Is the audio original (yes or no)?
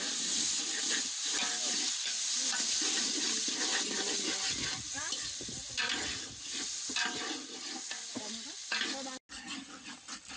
yes